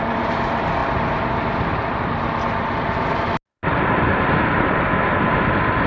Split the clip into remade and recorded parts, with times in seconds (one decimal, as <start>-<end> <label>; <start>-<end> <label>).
0.0-5.9 recorded